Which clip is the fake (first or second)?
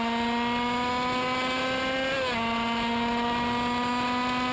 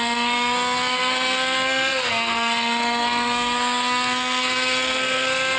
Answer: second